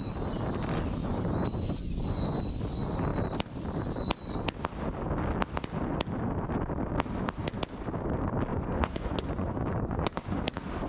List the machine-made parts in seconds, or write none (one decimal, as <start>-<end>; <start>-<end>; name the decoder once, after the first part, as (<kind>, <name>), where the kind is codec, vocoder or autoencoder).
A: 1.0-2.4 (vocoder, Vocos); 8.5-10.4

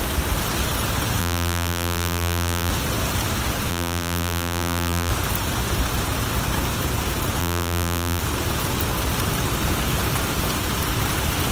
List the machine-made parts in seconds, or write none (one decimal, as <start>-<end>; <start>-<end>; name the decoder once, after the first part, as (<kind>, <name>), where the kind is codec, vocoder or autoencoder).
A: 1.2-2.7 (vocoder, BigVGAN v2); 3.7-5.1; 7.4-8.2

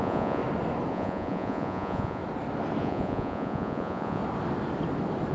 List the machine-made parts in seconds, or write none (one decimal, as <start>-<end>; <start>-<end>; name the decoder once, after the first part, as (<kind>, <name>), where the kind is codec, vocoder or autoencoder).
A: 0.0-0.4 (vocoder, Vocos); 0.9-2.2; 2.8-4.2

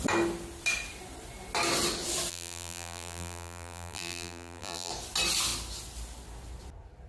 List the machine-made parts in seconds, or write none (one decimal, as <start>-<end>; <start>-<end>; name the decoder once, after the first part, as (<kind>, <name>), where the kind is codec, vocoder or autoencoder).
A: 2.3-4.9 (vocoder, BigVGAN v2)

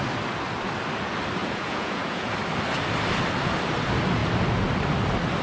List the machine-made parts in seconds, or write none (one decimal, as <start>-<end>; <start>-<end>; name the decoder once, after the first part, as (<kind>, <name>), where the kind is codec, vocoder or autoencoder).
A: 1.4-2.3 (vocoder, Vocos)